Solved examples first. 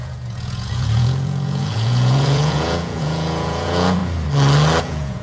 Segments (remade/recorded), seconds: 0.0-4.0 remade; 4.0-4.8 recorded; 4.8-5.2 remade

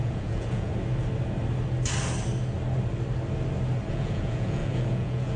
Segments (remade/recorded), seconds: 0.0-0.7 remade; 0.7-3.9 recorded; 3.9-5.4 remade

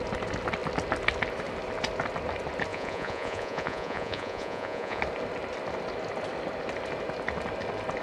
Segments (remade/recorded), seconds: 0.0-2.7 recorded; 2.7-5.0 remade; 5.0-8.0 recorded

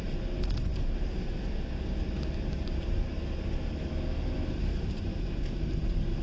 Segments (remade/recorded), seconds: 0.0-6.2 recorded

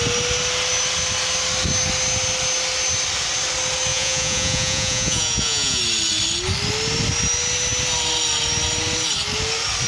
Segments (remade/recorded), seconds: 0.0-3.9 recorded; 3.9-5.8 remade; 5.8-9.9 recorded

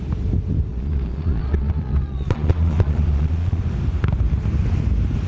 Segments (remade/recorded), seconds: 0.0-0.7 recorded; 0.7-3.6 remade; 3.6-5.3 recorded

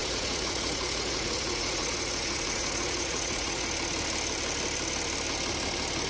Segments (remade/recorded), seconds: 0.0-3.7 remade; 3.7-6.1 recorded